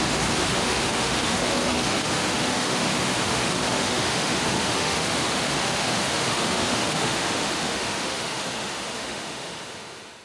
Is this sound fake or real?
fake